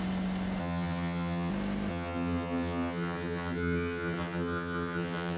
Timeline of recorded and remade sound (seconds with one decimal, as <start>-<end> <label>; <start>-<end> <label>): 0.0-0.6 recorded; 0.6-1.5 remade; 1.5-1.9 recorded; 1.9-5.4 remade